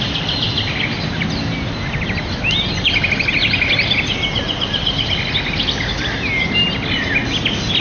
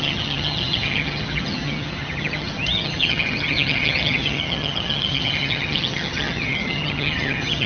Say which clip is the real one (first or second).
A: first